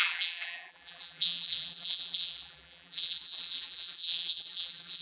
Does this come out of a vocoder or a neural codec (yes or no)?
yes